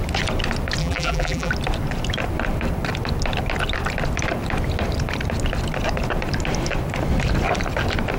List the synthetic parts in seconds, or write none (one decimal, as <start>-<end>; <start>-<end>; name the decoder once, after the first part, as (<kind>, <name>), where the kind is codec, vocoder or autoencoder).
0.8-1.5 (vocoder, BigVGAN v2)